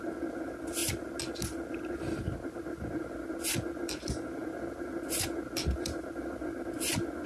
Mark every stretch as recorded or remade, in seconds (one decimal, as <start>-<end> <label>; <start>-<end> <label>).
0.0-7.3 recorded